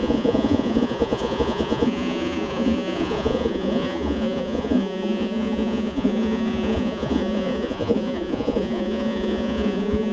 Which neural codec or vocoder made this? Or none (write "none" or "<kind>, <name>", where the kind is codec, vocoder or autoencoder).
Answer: vocoder, Vocos